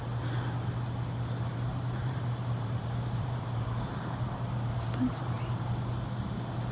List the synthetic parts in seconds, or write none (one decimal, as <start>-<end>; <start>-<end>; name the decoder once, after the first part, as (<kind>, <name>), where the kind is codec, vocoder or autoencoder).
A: 1.7-5.7 (vocoder, BigVGAN v2)